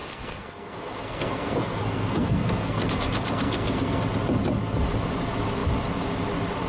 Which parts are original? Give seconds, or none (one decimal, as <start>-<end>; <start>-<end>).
4.0-6.7